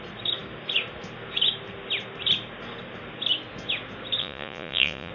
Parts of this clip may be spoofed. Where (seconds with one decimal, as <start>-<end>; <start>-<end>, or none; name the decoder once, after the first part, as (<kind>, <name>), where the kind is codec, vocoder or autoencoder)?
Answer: 4.2-5.1 (vocoder, Vocos)